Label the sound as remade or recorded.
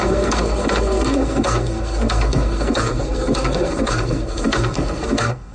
remade